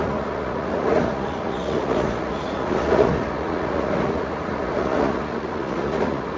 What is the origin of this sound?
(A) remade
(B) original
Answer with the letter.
A